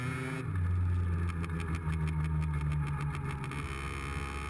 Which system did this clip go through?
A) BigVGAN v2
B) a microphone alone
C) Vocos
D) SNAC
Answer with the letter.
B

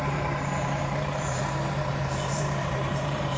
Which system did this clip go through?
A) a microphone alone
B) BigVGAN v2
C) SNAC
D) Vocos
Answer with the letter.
B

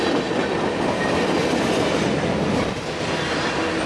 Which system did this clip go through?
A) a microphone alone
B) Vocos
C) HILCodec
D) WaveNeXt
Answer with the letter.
A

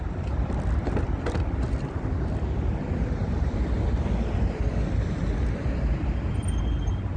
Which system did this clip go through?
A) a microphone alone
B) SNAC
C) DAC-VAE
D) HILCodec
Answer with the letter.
A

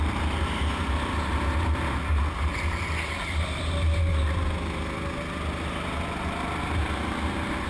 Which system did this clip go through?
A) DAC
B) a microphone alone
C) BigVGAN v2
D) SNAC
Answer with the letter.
B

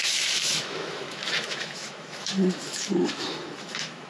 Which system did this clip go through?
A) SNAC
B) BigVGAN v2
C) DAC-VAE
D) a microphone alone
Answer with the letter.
C